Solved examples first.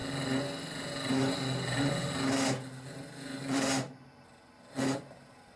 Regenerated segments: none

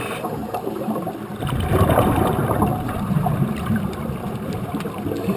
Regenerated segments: 0.4-1.1 (vocoder, BigVGAN v2); 2.7-4.8

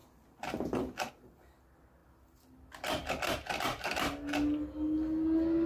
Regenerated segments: 0.0-1.1 (vocoder, BigVGAN v2)

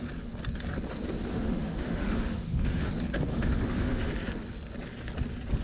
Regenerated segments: 1.3-2.9 (autoencoder, DAC-VAE); 3.3-4.1

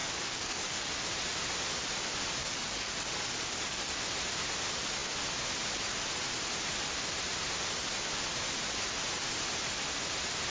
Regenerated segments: 0.0-0.9 (codec, DAC); 2.4-3.9